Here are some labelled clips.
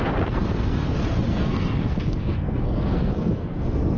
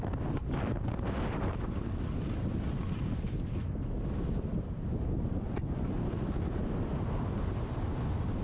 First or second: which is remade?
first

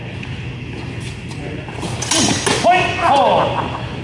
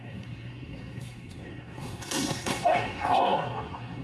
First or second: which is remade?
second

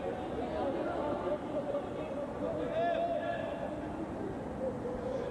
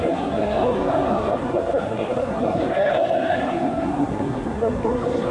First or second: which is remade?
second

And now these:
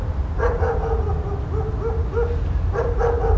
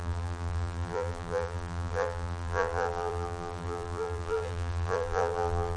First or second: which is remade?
second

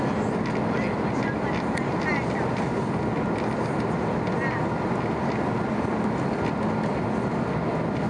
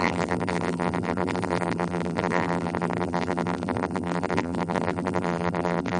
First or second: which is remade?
second